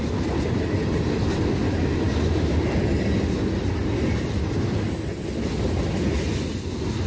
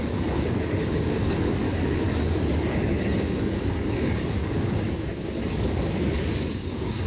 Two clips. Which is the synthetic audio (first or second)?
second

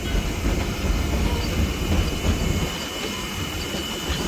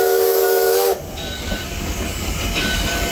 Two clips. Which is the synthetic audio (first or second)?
second